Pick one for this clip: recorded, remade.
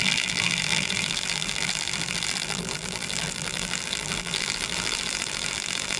remade